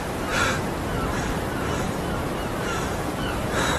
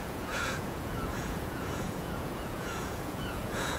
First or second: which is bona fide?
first